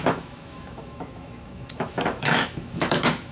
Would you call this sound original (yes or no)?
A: no